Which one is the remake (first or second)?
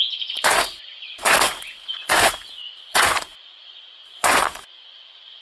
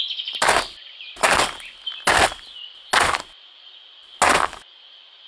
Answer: first